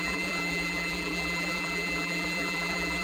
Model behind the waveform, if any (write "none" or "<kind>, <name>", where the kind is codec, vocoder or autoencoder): vocoder, BigVGAN v2